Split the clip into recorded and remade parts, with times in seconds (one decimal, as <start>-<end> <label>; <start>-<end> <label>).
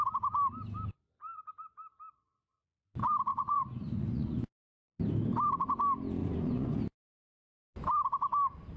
0.0-3.3 recorded; 3.3-5.0 remade; 5.0-6.2 recorded; 6.2-6.8 remade; 6.8-8.8 recorded